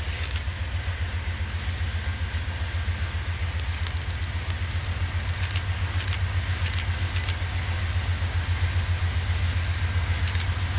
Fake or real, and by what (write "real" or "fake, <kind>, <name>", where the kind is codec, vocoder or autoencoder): real